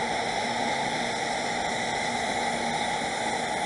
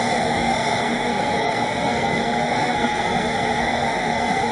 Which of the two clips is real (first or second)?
first